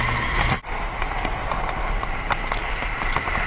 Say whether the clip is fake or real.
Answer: real